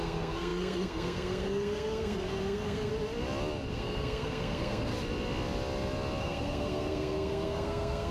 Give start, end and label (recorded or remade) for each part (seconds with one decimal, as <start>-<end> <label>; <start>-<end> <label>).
0.0-2.9 remade; 2.9-3.7 recorded; 3.7-4.9 remade; 4.9-6.2 recorded; 6.2-8.1 remade